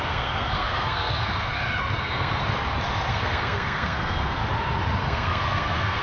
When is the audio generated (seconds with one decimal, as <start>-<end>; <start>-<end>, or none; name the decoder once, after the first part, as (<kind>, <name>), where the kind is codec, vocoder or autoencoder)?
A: 0.0-1.5 (codec, SNAC); 2.0-2.4; 3.1-4.4; 5.0-6.0